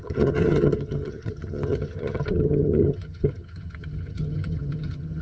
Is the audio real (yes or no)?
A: no